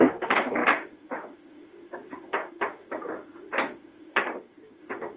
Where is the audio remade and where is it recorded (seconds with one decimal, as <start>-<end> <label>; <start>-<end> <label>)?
0.0-5.2 remade